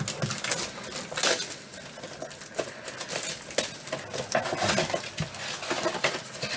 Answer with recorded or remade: recorded